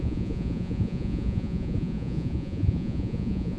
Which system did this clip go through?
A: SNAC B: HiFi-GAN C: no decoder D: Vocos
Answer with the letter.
D